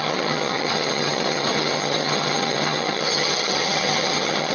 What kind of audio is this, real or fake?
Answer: fake